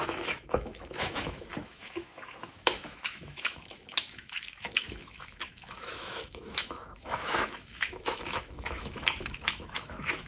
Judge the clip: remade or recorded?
remade